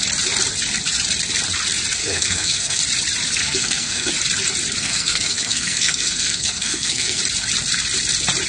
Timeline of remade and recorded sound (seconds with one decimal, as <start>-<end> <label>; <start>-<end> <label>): 0.0-2.0 recorded; 2.0-2.8 remade; 2.8-3.4 recorded; 3.4-4.1 remade; 4.1-4.8 recorded; 4.8-7.2 remade; 7.2-8.5 recorded